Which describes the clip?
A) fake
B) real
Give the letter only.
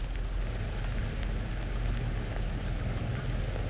B